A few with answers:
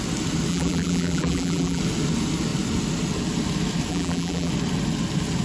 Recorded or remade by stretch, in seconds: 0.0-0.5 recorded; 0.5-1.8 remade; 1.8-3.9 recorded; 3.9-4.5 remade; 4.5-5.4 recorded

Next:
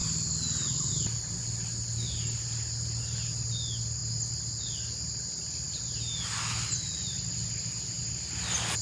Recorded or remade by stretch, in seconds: 0.0-5.4 recorded; 5.4-5.9 remade; 5.9-8.8 recorded

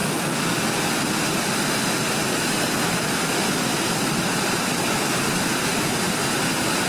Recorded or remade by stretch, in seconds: 0.0-5.7 recorded; 5.7-6.2 remade; 6.2-6.9 recorded